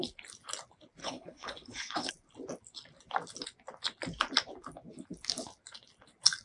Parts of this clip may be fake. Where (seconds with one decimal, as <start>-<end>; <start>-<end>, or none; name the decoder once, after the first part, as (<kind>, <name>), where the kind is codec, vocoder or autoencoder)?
1.0-2.1 (codec, HILCodec)

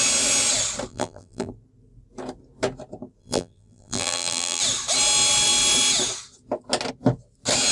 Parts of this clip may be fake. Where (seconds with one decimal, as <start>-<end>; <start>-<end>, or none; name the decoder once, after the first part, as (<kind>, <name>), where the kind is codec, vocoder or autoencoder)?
0.9-1.5 (vocoder, BigVGAN v2); 3.2-4.6

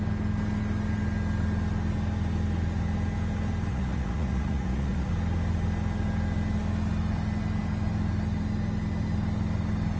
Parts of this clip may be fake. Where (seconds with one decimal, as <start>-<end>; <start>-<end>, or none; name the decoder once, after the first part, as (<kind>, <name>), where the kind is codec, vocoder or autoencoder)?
3.7-5.1 (vocoder, Vocos)

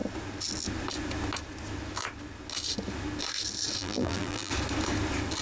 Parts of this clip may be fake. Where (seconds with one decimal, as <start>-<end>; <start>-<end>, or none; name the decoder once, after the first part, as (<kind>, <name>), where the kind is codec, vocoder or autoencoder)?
3.8-4.5 (vocoder, BigVGAN v2)

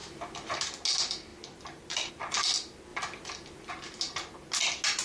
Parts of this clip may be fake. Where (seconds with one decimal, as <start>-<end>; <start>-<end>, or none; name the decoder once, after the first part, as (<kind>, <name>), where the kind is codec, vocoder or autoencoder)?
0.0-0.6 (vocoder, BigVGAN v2); 1.3-2.1

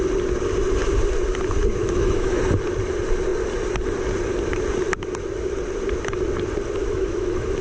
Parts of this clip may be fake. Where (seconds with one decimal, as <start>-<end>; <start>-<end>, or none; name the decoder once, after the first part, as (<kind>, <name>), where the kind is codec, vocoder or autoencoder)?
1.8-2.4 (autoencoder, DAC-VAE); 6.8-7.6

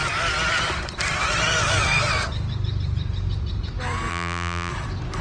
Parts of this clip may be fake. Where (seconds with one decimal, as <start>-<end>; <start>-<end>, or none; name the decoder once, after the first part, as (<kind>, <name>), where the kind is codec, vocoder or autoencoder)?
4.1-4.7 (vocoder, BigVGAN v2)